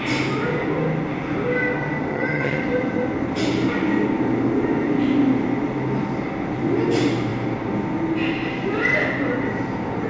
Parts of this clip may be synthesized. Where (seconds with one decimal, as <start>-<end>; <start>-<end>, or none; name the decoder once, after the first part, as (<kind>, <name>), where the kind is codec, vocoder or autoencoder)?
2.1-2.6 (vocoder, HiFi-GAN)